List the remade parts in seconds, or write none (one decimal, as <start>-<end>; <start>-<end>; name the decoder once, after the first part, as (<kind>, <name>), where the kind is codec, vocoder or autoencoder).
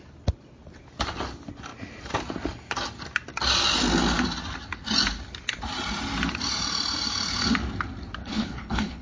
8.2-9.0 (codec, HILCodec)